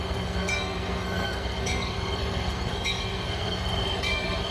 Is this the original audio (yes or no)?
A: no